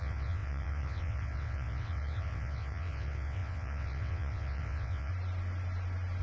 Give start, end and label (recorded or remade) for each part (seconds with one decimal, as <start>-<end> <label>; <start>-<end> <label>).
0.0-5.1 remade; 5.1-6.2 recorded